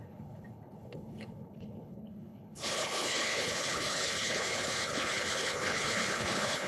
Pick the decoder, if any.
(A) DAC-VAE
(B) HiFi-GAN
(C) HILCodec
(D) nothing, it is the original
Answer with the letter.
C